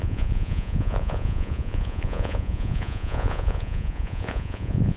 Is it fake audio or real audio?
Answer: fake